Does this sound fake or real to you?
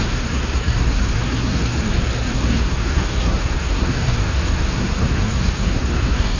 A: fake